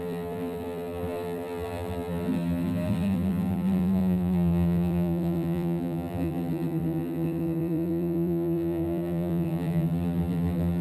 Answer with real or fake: fake